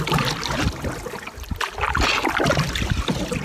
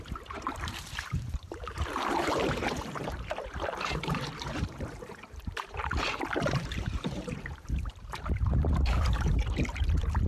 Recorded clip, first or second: first